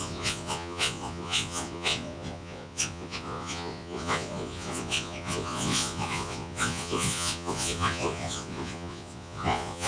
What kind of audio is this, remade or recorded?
remade